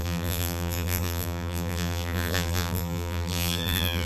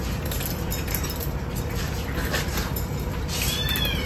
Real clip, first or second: second